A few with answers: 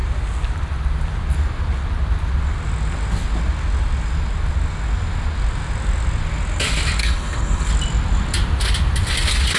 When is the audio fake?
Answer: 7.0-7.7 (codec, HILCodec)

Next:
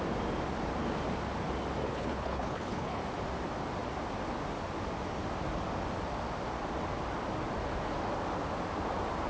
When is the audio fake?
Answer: 1.9-3.0 (codec, HILCodec)

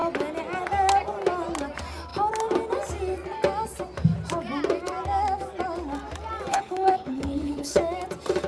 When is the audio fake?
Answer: 6.5-7.8 (codec, HILCodec)

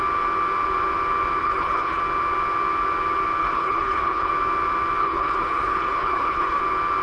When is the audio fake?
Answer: 1.4-2.0 (codec, HILCodec); 3.4-4.3; 5.0-6.6

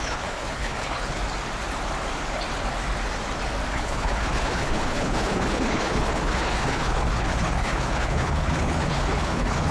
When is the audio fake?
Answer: 0.0-1.2 (codec, HILCodec); 3.7-9.7

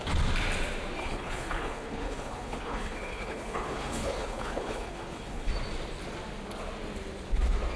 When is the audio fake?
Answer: 1.0-5.5 (codec, HILCodec)

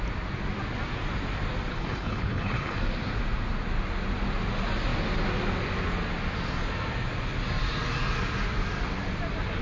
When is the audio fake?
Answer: 1.7-2.8 (codec, HILCodec)